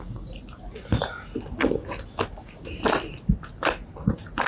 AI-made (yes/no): no